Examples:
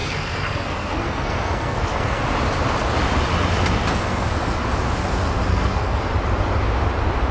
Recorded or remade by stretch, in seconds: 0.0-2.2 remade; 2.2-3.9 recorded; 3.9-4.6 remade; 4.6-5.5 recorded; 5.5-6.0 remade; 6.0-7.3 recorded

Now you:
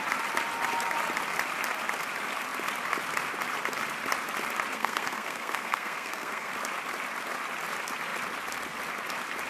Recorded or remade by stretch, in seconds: 0.0-4.7 recorded; 4.7-6.5 remade; 6.5-9.5 recorded

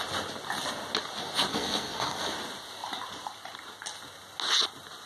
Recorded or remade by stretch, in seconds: 0.0-1.5 recorded; 1.5-2.3 remade; 2.3-5.1 recorded

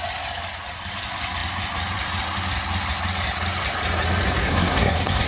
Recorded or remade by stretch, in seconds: 0.0-4.4 recorded; 4.4-5.3 remade

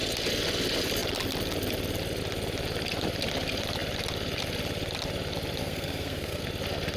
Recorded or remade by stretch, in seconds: 0.0-5.6 recorded; 5.6-6.4 remade; 6.4-7.0 recorded

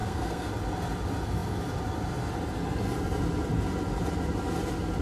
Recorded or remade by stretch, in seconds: 0.0-0.5 remade; 0.5-5.0 recorded